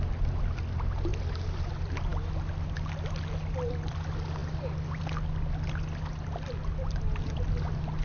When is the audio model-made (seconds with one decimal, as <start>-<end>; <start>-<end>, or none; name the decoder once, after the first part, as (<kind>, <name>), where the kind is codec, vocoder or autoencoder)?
none